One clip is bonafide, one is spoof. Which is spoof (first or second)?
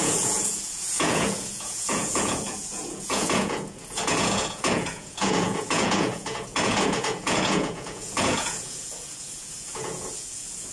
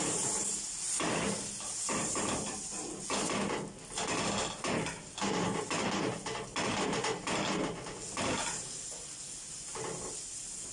first